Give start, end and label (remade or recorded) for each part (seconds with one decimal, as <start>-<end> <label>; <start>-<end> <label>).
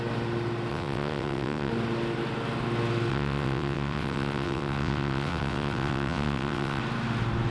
0.0-0.7 recorded; 0.7-1.7 remade; 1.7-3.1 recorded; 3.1-6.8 remade; 6.8-7.5 recorded